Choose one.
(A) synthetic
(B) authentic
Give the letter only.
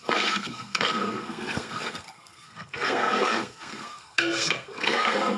A